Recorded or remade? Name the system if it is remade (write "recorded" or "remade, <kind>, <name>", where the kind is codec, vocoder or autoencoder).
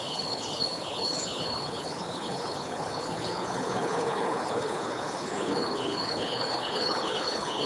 remade, codec, HILCodec